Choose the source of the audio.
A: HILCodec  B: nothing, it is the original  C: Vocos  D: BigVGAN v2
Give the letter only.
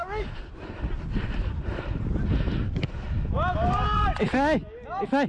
B